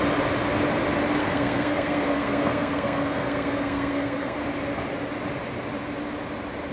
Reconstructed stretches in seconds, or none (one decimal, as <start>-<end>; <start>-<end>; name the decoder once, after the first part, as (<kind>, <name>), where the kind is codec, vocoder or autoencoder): 1.2-4.4 (codec, SNAC)